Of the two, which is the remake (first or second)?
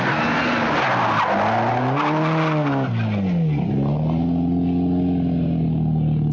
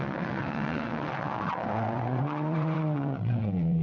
second